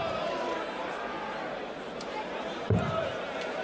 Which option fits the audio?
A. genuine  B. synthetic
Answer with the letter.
B